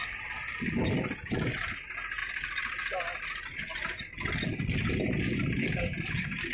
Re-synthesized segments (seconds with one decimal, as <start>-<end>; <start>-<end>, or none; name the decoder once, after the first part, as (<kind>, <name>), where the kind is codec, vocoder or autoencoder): 2.2-6.1 (vocoder, BigVGAN v2)